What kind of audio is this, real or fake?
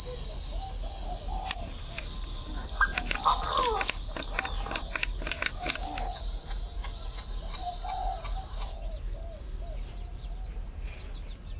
real